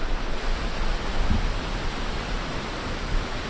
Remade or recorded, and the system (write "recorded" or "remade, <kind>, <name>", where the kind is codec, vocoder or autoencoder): recorded